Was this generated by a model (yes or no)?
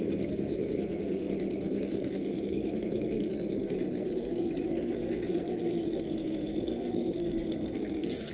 yes